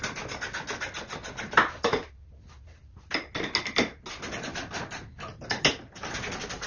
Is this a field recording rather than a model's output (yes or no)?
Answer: yes